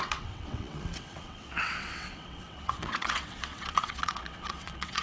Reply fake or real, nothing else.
fake